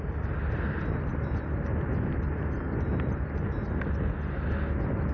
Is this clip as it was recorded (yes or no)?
yes